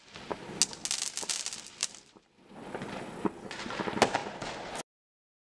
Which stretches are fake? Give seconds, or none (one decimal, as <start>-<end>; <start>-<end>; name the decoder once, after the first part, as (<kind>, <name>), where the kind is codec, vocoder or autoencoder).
1.8-2.4 (vocoder, BigVGAN v2)